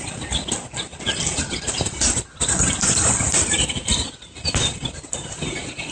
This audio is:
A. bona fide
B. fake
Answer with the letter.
A